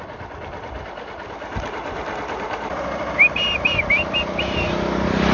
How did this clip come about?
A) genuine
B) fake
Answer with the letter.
A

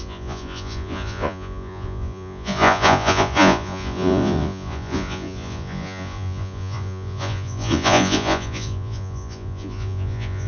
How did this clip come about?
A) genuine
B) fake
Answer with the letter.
B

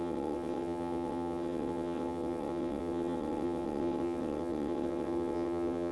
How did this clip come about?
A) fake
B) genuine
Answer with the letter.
A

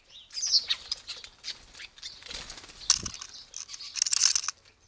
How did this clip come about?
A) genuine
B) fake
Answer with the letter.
A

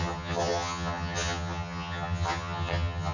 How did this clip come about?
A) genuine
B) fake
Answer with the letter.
B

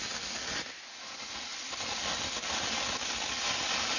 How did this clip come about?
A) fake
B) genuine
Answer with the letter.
B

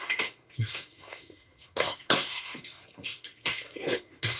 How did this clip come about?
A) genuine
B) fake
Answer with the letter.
B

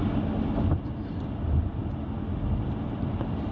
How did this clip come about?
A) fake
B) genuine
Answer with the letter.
B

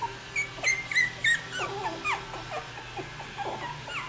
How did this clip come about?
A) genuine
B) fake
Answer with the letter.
A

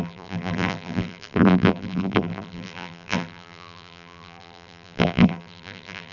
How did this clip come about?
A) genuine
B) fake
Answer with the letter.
B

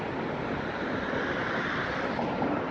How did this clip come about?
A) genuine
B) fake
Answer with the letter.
A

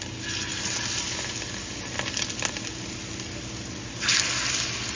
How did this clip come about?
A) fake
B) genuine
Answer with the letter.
B